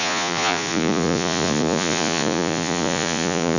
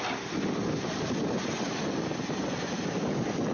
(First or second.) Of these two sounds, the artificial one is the first